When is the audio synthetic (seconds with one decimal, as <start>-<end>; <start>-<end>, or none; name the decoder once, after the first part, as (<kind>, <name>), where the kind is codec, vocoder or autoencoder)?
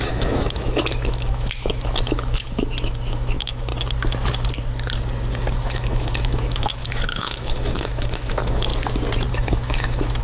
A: 0.0-3.7 (autoencoder, DAC-VAE); 5.6-8.7; 9.3-10.2